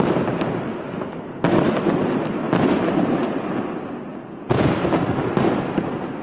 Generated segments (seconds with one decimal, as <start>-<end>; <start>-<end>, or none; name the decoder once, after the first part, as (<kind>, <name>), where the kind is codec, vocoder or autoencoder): 4.1-4.7 (vocoder, Vocos)